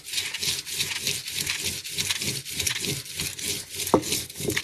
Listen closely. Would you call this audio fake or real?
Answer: real